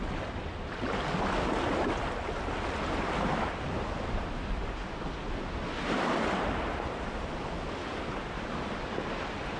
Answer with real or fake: real